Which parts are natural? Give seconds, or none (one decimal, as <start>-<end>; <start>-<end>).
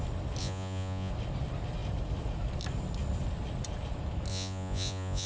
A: 0.0-0.4; 1.1-4.3